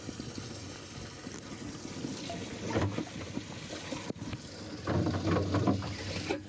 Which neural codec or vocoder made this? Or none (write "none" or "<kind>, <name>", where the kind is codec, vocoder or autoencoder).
none